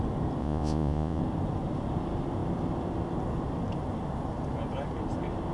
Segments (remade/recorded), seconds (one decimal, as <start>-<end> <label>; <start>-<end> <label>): 0.0-0.4 recorded; 0.4-1.2 remade; 1.2-5.5 recorded